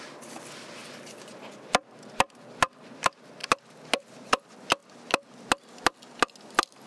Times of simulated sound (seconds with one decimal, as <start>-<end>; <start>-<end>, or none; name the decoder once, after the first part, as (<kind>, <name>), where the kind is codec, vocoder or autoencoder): none